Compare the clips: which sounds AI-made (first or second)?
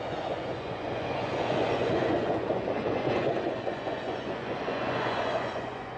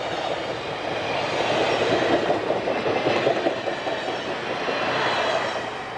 first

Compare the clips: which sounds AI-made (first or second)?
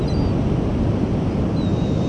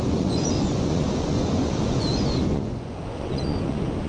second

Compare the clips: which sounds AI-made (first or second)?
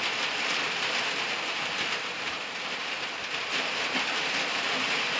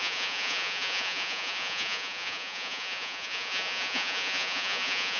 second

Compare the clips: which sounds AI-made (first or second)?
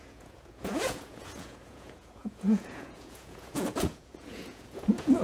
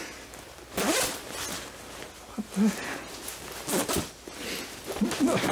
first